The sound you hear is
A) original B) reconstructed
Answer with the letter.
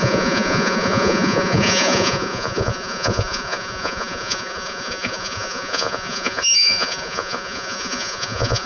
B